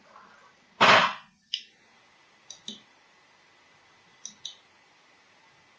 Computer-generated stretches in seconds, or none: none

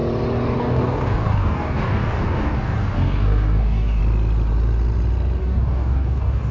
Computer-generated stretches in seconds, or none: 0.6-4.0; 5.4-6.5

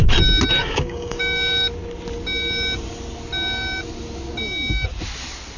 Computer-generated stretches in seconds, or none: 0.6-1.2